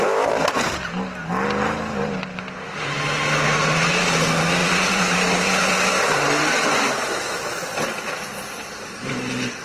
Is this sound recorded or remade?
recorded